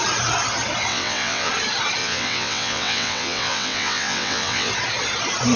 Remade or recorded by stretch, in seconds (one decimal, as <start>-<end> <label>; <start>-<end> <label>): 0.0-0.9 recorded; 0.9-1.5 remade; 1.5-2.0 recorded; 2.0-4.7 remade; 4.7-5.6 recorded